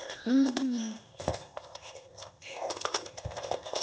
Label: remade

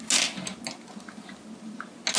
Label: recorded